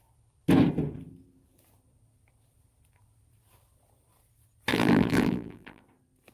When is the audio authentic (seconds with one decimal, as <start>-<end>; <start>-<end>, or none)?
0.0-4.7; 5.8-6.3